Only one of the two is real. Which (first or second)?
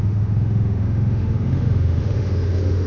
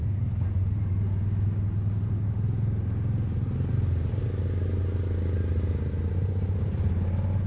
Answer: second